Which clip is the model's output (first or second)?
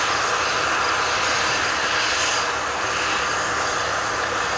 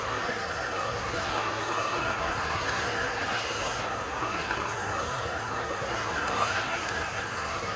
second